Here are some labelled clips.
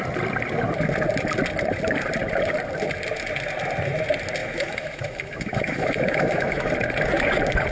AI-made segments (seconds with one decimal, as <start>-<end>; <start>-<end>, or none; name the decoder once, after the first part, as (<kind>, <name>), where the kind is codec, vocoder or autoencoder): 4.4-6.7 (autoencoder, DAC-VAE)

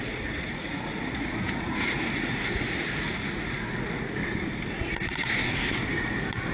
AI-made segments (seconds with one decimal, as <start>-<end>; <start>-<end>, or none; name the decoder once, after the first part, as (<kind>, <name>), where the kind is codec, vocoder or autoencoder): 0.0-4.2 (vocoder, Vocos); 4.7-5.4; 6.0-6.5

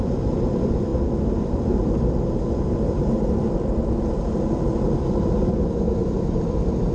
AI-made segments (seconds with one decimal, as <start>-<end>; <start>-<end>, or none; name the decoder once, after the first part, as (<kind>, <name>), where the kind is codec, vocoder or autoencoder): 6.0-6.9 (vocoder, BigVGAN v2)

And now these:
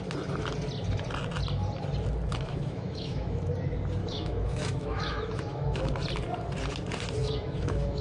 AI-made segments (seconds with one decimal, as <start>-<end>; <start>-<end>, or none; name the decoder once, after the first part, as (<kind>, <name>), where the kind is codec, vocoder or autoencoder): 2.3-3.5 (autoencoder, DAC-VAE); 4.0-5.8; 7.2-8.0

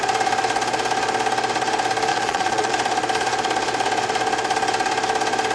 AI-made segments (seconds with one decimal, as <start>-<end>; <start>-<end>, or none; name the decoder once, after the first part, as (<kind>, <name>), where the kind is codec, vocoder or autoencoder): 2.1-2.7 (vocoder, Vocos)